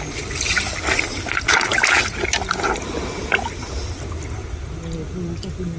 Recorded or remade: recorded